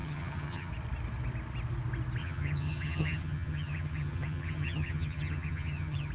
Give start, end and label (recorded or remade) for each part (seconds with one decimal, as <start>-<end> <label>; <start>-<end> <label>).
0.0-0.7 remade; 0.7-2.2 recorded; 2.2-6.1 remade